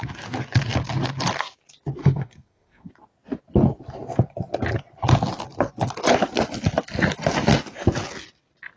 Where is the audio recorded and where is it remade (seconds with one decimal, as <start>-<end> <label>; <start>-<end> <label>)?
0.0-2.0 recorded; 2.0-2.9 remade; 2.9-8.8 recorded